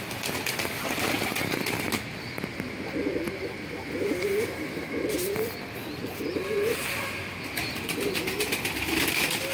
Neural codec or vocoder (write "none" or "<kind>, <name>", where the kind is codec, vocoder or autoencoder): none